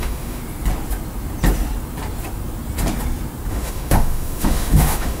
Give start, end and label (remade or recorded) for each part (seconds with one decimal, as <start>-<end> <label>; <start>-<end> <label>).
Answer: 0.0-0.4 remade; 0.4-3.5 recorded; 3.5-5.2 remade